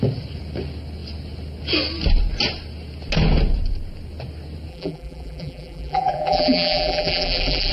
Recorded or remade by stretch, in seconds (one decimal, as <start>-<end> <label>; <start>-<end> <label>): 0.0-4.7 recorded; 4.7-7.7 remade